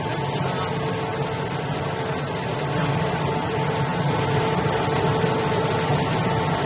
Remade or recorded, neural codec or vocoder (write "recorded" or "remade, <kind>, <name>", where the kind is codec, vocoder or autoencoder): recorded